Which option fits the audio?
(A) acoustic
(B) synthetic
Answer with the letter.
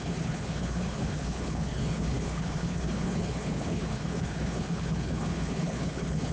B